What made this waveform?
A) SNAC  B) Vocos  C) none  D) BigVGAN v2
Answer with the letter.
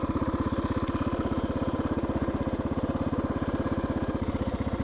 D